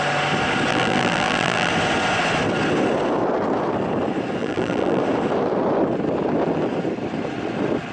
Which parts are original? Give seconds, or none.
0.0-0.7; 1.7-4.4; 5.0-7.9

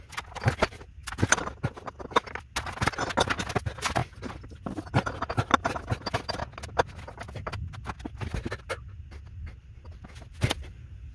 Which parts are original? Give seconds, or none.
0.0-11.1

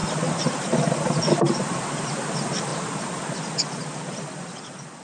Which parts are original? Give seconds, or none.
2.1-2.7; 3.2-5.0